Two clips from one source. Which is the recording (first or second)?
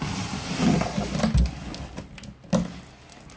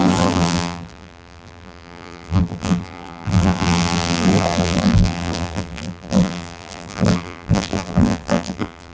first